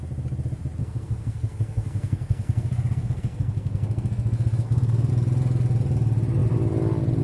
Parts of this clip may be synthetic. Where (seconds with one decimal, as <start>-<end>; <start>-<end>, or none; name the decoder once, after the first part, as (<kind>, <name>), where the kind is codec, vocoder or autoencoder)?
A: 0.8-5.1 (codec, SNAC)